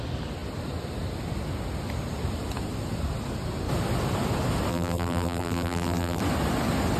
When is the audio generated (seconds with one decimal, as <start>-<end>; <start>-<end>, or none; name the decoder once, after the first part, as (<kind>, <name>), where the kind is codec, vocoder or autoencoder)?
4.7-6.2 (vocoder, BigVGAN v2)

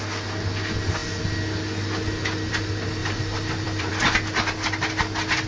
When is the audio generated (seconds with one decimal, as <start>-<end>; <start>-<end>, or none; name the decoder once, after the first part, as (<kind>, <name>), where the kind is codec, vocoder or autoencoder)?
3.0-3.9 (vocoder, BigVGAN v2)

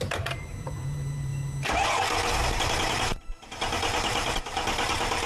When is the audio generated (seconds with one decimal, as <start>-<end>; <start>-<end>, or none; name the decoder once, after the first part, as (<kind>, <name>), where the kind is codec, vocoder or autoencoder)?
0.0-1.3 (vocoder, BigVGAN v2); 2.4-5.3

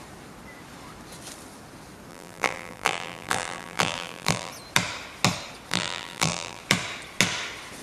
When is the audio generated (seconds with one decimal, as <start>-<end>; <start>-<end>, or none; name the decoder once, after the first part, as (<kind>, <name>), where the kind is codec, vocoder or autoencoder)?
2.1-4.5 (vocoder, BigVGAN v2); 5.7-6.6

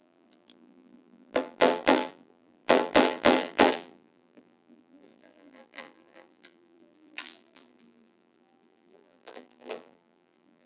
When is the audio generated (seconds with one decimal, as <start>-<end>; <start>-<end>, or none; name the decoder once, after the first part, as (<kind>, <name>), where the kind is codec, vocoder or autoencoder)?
0.0-10.7 (vocoder, BigVGAN v2)